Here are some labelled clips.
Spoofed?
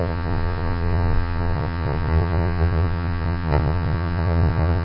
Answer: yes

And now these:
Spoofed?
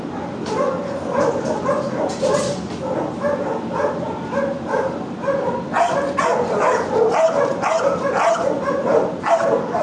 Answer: no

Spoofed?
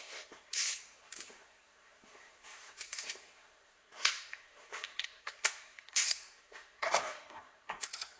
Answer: yes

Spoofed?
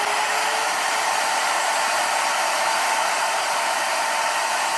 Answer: yes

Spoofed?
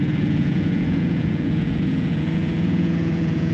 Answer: yes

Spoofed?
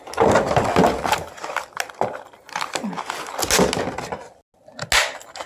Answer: no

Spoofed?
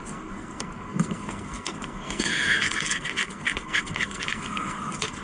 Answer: yes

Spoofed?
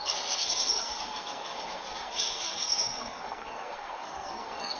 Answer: yes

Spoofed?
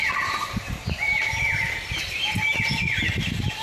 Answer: no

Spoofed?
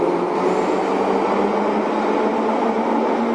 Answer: no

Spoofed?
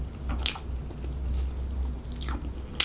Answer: no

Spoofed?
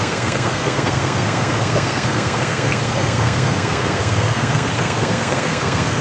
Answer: yes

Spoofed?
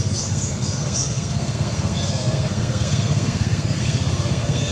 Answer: yes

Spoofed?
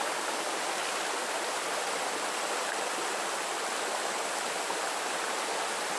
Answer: yes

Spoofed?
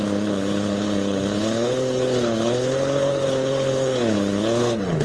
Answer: yes